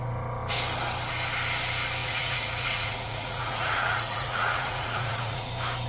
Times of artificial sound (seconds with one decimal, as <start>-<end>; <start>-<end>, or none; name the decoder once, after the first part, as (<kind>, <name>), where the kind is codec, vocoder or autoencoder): 2.0-5.5 (vocoder, Vocos)